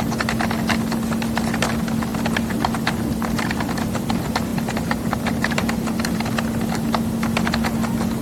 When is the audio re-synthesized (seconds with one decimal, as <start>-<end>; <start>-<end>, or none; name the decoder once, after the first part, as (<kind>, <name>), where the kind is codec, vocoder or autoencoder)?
4.5-6.3 (vocoder, BigVGAN v2)